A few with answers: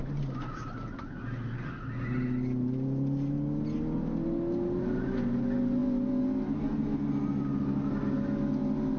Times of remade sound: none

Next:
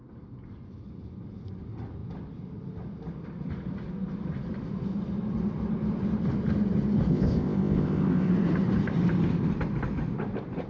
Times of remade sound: 7.1-8.3 (codec, ZipCodec)

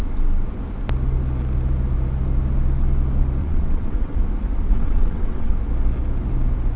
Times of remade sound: 3.4-4.2 (vocoder, WaveNeXt); 4.7-5.5

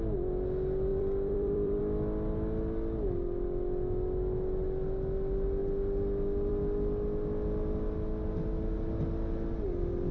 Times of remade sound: 0.9-1.8 (vocoder, BigVGAN v2)

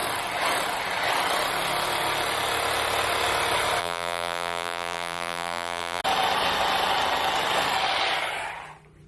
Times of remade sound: 3.8-6.0 (vocoder, BigVGAN v2)